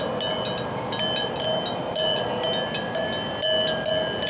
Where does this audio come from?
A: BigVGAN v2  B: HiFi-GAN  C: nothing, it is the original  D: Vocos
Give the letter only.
C